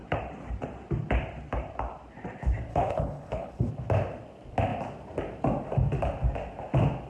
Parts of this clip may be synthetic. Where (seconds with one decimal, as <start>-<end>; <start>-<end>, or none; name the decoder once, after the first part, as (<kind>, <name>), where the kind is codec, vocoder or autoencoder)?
2.7-3.7 (codec, HILCodec)